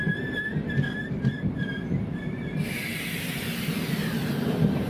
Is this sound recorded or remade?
recorded